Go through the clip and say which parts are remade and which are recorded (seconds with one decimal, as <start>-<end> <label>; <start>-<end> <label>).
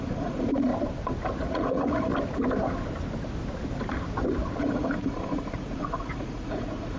0.0-0.7 remade; 0.7-1.5 recorded; 1.5-2.1 remade; 2.1-4.6 recorded; 4.6-7.0 remade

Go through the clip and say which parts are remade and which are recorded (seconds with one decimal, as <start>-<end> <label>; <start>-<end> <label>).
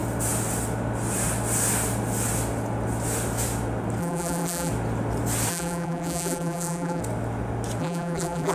0.0-4.0 recorded; 4.0-4.7 remade; 4.7-5.5 recorded; 5.5-7.0 remade; 7.0-7.8 recorded; 7.8-8.5 remade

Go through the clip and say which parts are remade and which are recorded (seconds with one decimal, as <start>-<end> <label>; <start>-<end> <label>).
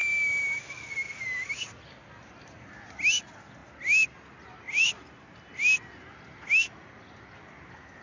0.0-8.0 recorded